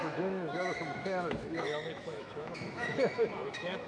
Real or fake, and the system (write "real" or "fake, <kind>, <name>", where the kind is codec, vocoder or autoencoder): fake, autoencoder, DAC-VAE